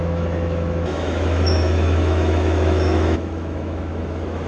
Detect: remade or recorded remade